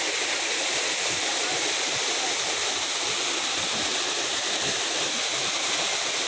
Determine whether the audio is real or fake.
fake